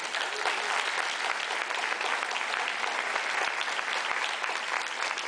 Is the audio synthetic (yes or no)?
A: no